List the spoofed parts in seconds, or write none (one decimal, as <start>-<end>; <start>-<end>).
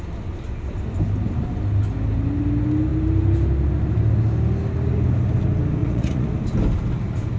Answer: 5.8-6.3